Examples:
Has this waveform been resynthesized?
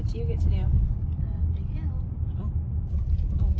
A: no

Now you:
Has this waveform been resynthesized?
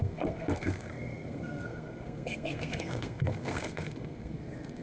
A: yes